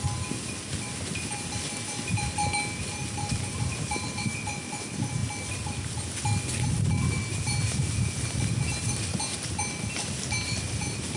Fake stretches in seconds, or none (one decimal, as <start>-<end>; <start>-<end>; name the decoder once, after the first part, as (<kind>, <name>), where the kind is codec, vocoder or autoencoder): none